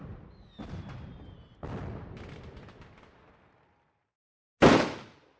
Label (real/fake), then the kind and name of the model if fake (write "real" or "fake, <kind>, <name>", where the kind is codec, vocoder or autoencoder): real